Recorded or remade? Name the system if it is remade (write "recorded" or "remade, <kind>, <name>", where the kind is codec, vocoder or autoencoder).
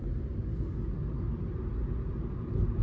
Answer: recorded